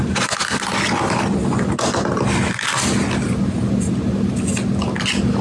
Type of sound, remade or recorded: recorded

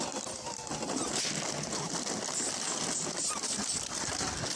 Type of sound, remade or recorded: recorded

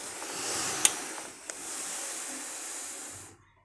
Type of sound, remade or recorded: recorded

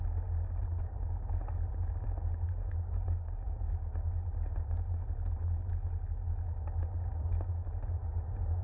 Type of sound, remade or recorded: recorded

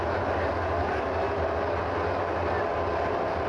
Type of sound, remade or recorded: recorded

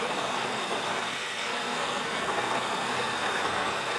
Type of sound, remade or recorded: remade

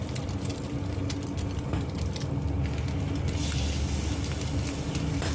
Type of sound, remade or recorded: recorded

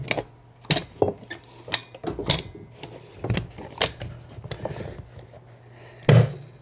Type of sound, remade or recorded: recorded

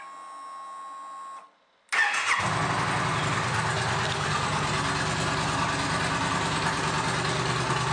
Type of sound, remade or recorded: recorded